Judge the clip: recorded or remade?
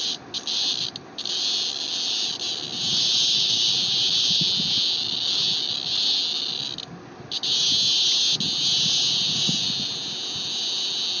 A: recorded